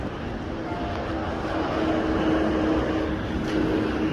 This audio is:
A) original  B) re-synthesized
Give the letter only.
A